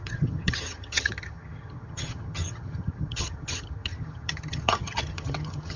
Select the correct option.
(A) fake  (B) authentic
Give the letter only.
A